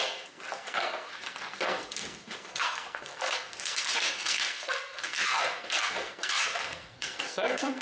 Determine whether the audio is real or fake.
fake